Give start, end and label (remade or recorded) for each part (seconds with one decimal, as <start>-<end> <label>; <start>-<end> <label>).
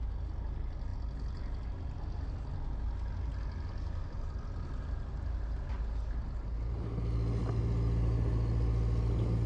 0.0-9.5 recorded